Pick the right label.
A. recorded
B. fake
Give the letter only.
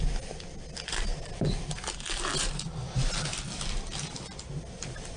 A